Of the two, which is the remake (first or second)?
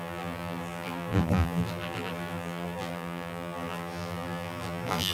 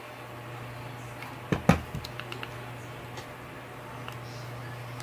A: first